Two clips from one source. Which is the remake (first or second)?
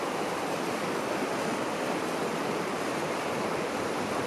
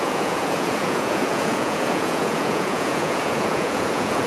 second